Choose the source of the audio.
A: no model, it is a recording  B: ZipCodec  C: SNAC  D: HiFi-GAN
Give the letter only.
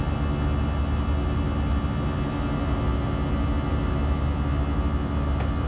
A